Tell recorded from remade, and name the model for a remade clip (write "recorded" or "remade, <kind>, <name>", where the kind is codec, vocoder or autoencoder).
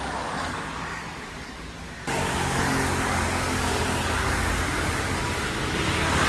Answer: remade, codec, DAC